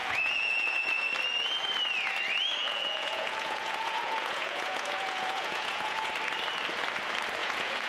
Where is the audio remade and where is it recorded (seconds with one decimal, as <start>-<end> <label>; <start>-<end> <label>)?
0.0-1.1 remade; 1.1-2.6 recorded; 2.6-6.1 remade; 6.1-7.4 recorded; 7.4-7.9 remade